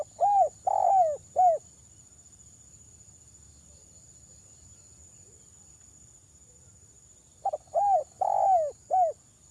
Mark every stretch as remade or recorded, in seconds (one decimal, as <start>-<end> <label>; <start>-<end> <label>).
0.0-9.5 recorded